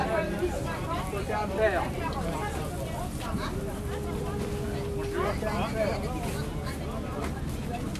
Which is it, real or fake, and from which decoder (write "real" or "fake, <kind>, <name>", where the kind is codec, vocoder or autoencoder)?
real